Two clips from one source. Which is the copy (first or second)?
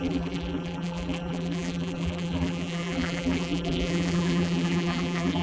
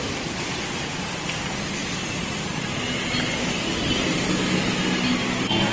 first